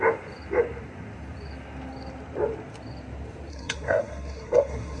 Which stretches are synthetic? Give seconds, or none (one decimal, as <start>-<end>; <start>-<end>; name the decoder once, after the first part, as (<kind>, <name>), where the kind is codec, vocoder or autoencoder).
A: 3.5-5.0 (codec, SNAC)